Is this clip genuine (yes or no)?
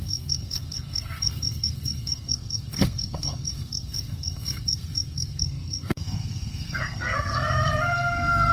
no